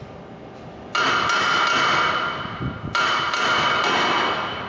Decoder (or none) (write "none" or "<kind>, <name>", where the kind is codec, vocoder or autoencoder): none